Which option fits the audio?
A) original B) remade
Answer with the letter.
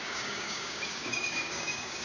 B